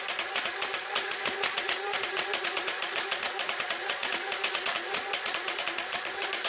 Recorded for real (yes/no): no